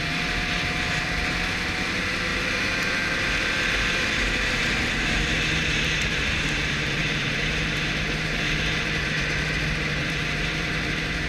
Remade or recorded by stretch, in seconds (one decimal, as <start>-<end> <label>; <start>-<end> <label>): 0.0-11.3 remade